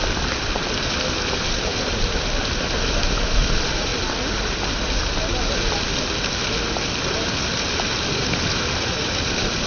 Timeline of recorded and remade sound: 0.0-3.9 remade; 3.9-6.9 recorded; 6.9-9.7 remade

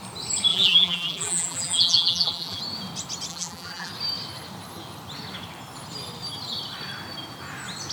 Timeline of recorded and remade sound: 0.0-0.5 recorded; 0.5-2.6 remade; 2.6-3.3 recorded; 3.3-3.9 remade; 3.9-7.9 recorded

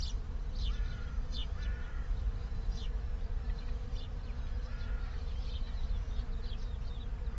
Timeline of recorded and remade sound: 0.0-1.4 recorded; 1.4-2.9 remade; 2.9-4.7 recorded; 4.7-6.3 remade; 6.3-7.4 recorded

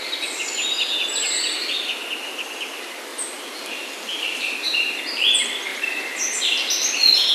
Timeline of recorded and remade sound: 0.0-3.1 recorded; 3.1-5.0 remade; 5.0-5.7 recorded; 5.7-7.3 remade

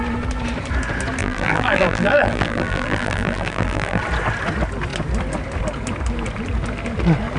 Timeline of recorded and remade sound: 0.0-1.2 recorded; 1.2-4.0 remade; 4.0-7.4 recorded

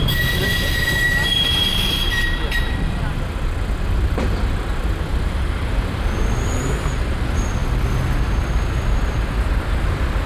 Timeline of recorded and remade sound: 0.0-10.3 recorded